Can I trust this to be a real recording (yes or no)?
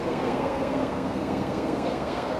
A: no